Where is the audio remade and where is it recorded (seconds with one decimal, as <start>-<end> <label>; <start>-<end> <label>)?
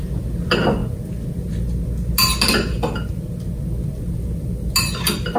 0.0-5.4 recorded